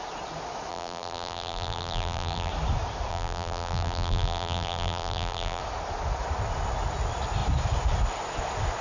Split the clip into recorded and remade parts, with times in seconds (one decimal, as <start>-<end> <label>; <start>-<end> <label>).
0.0-0.7 recorded; 0.7-2.5 remade; 2.5-3.1 recorded; 3.1-5.6 remade; 5.6-8.8 recorded